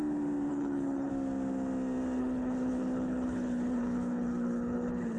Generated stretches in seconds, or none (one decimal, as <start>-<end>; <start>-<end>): 0.5-1.1; 2.2-5.2